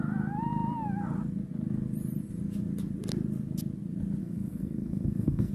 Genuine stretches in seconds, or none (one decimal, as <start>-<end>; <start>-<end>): 0.0-4.2